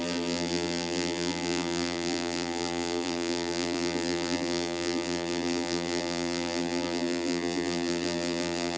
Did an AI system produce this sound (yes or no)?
yes